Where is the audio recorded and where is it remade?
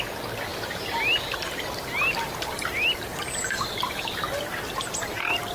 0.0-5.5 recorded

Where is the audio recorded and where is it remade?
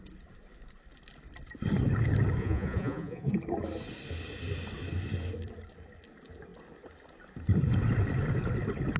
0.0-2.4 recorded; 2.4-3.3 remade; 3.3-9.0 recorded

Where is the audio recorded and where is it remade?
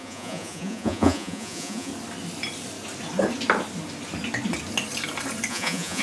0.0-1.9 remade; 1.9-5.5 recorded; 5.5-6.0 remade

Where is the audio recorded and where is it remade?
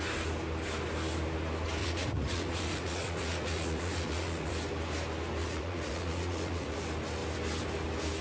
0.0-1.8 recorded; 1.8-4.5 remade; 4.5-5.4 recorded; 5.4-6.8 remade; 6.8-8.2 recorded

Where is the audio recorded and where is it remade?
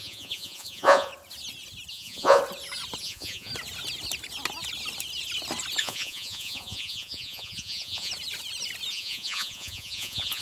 0.0-1.1 remade; 1.1-1.9 recorded; 1.9-2.4 remade; 2.4-3.0 recorded; 3.0-3.5 remade; 3.5-5.8 recorded; 5.8-8.1 remade; 8.1-8.9 recorded; 8.9-10.4 remade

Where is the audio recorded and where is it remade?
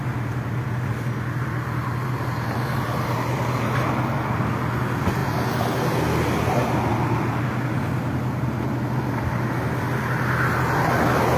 0.0-11.4 recorded